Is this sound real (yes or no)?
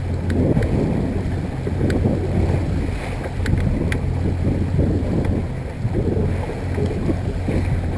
yes